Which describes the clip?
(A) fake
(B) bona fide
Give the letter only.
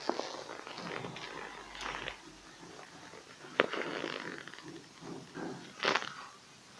B